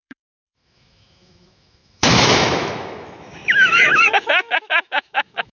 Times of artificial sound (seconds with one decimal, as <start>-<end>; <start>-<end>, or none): 0.0-5.5